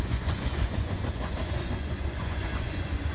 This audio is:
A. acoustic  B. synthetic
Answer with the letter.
B